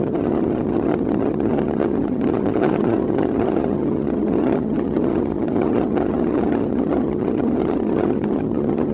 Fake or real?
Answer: fake